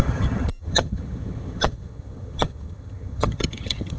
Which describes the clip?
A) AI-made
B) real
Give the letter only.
A